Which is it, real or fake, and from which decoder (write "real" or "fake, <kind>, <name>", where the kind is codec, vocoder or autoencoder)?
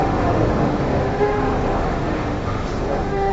fake, autoencoder, DAC-VAE